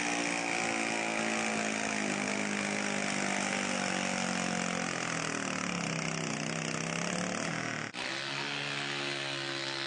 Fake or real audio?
real